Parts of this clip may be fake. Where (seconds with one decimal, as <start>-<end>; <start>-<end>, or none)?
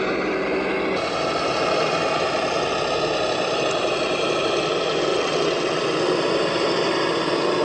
5.1-5.8